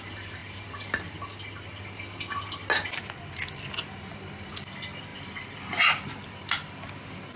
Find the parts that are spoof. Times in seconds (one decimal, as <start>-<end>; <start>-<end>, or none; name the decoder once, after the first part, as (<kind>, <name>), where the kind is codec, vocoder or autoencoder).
none